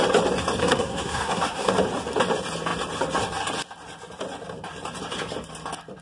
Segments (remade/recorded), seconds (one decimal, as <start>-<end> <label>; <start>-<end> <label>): 0.0-0.6 recorded; 0.6-1.7 remade; 1.7-6.0 recorded